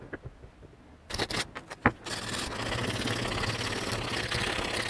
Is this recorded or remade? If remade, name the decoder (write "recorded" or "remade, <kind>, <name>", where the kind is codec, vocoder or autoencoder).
recorded